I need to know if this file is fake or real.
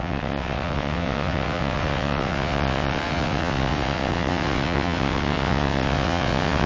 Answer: fake